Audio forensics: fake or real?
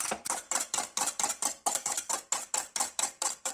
fake